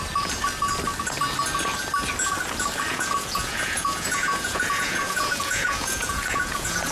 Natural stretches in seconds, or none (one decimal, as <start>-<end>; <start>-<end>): 0.0-2.9